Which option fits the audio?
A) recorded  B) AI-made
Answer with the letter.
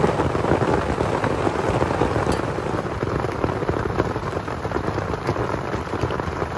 A